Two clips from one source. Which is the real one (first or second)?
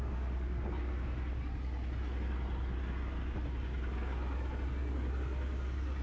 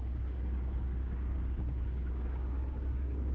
first